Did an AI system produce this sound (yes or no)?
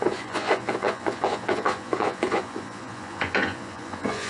yes